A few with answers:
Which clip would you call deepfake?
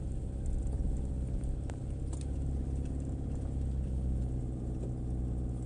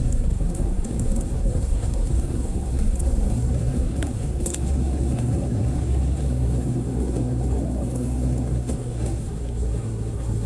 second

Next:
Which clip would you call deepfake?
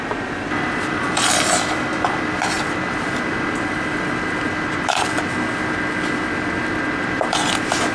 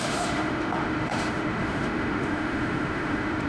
second